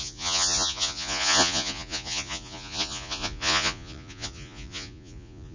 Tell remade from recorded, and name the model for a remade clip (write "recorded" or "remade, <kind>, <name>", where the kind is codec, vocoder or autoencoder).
remade, vocoder, Vocos